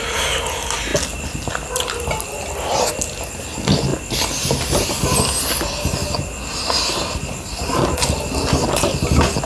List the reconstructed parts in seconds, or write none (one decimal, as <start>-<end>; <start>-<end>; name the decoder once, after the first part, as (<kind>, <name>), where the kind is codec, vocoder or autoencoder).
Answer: none